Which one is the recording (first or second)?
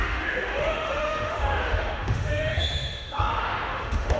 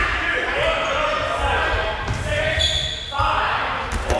second